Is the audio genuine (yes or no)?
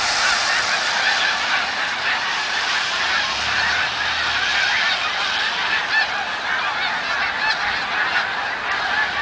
yes